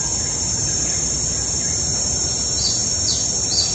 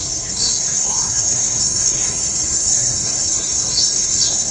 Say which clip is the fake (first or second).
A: second